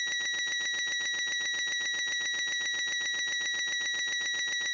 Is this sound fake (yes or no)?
no